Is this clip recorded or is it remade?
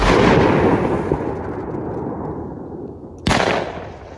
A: recorded